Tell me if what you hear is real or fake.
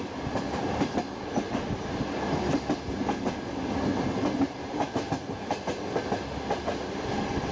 real